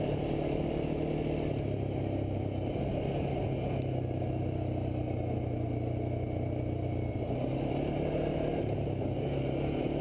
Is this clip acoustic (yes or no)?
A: yes